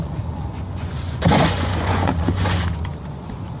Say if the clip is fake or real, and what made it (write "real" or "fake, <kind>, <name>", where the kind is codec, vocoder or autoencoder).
fake, vocoder, Vocos